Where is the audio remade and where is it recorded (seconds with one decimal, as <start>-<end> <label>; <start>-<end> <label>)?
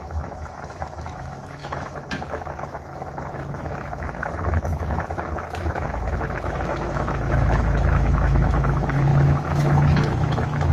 0.0-10.7 remade